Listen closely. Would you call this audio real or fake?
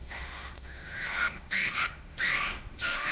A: fake